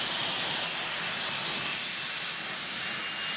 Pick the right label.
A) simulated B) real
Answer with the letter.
B